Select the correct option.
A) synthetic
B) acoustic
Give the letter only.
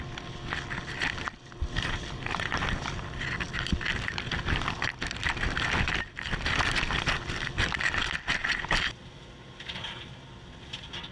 B